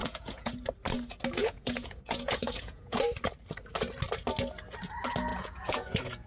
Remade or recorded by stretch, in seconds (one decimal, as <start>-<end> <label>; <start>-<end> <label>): 0.0-0.5 remade; 0.5-1.4 recorded; 1.4-3.0 remade; 3.0-5.3 recorded; 5.3-6.3 remade

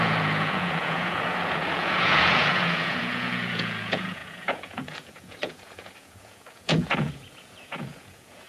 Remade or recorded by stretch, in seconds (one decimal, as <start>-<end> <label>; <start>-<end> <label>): 0.0-8.5 remade

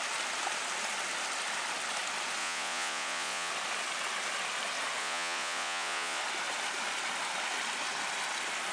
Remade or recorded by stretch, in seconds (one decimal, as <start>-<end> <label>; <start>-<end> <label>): 0.0-2.4 recorded; 2.4-3.5 remade; 3.5-5.0 recorded; 5.0-6.2 remade; 6.2-8.7 recorded

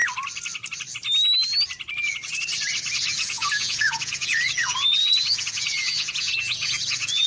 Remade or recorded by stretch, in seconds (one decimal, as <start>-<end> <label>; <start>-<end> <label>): 0.0-2.9 recorded; 2.9-7.3 remade

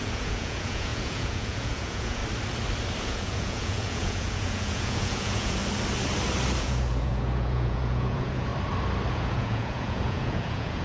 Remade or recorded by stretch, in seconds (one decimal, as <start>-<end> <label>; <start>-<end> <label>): 0.0-2.2 remade; 2.2-3.0 recorded; 3.0-5.6 remade; 5.6-6.6 recorded; 6.6-8.5 remade; 8.5-9.1 recorded; 9.1-10.8 remade